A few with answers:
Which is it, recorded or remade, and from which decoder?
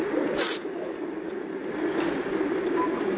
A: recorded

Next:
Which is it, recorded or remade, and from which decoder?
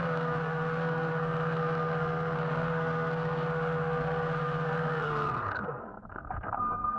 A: remade, codec, SNAC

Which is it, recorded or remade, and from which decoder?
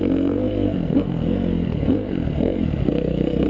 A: remade, codec, SNAC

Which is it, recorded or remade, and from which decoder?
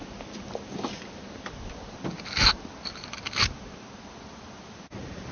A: recorded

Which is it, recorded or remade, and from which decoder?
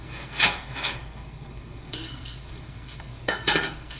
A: remade, codec, SNAC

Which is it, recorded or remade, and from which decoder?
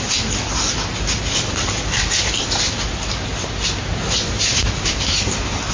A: recorded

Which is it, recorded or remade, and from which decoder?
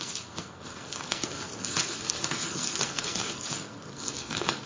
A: remade, codec, SNAC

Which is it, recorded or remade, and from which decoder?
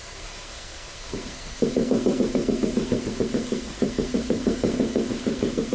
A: remade, codec, SNAC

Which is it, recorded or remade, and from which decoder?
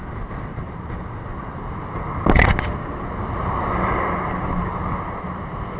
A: recorded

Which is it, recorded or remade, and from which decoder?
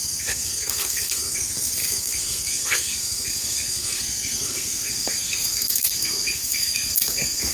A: remade, codec, SNAC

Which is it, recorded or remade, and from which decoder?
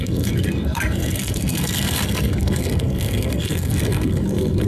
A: remade, codec, SNAC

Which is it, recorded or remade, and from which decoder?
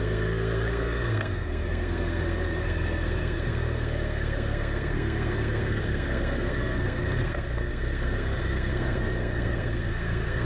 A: remade, codec, SNAC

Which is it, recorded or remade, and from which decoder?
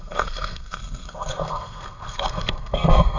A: remade, codec, SNAC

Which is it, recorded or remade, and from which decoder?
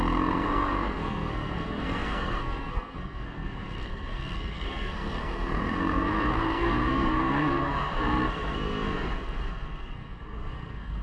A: remade, codec, SNAC